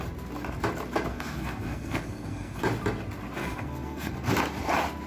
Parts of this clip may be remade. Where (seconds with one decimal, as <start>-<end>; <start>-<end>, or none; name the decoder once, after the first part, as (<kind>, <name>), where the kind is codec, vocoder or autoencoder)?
1.1-2.6 (codec, SNAC); 3.4-4.1